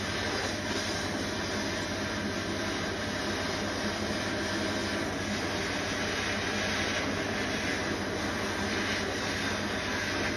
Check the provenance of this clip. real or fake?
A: real